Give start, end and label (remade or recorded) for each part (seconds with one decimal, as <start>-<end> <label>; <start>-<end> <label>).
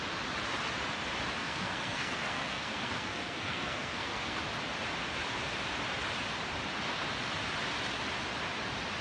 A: 0.0-1.4 recorded; 1.4-4.4 remade; 4.4-9.0 recorded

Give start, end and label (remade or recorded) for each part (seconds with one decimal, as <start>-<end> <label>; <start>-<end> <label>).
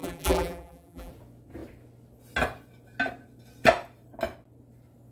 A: 0.0-1.1 remade; 1.1-5.1 recorded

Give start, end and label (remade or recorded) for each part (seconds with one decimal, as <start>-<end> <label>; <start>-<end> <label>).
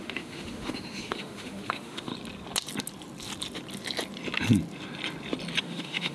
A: 0.0-2.1 remade; 2.1-5.6 recorded; 5.6-6.1 remade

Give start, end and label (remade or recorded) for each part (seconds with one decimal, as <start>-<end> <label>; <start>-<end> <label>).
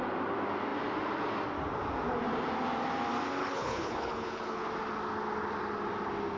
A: 0.0-3.4 recorded; 3.4-4.7 remade; 4.7-6.4 recorded